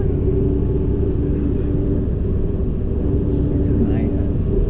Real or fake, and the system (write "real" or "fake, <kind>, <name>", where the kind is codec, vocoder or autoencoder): real